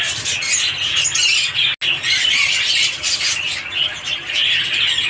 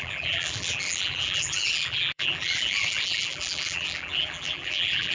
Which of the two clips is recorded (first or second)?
first